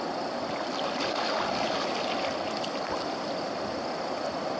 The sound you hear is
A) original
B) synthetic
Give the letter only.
A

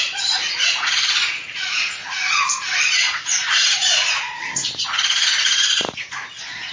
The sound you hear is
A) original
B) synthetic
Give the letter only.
B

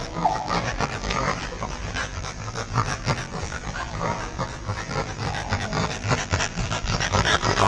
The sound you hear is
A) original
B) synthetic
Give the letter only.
B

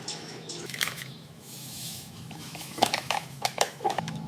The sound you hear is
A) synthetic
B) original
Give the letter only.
A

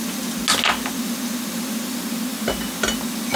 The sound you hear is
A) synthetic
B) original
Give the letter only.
B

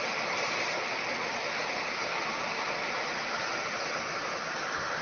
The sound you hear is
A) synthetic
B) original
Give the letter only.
B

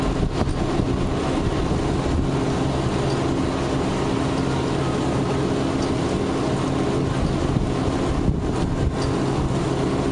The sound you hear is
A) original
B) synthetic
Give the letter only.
A